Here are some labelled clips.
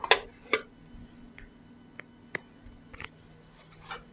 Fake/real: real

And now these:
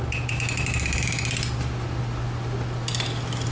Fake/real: real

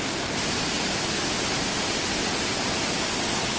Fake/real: real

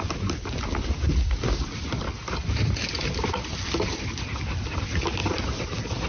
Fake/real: real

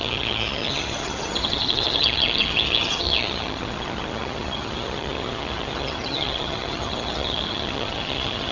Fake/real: fake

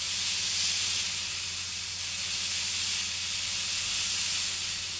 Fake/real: real